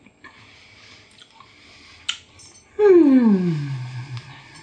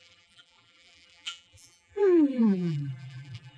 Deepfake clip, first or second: second